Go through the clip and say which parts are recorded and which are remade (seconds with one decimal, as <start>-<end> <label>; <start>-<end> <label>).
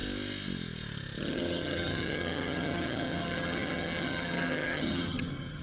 0.0-1.2 recorded; 1.2-5.6 remade